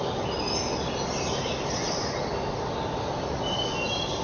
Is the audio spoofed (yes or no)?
no